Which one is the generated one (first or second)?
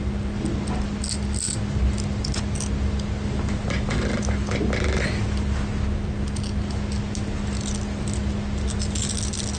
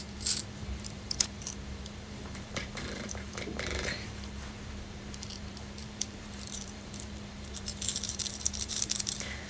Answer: second